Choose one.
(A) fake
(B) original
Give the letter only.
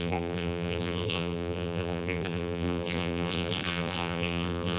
A